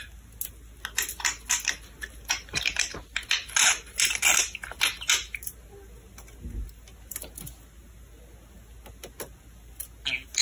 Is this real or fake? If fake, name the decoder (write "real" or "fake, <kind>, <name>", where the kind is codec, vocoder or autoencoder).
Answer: real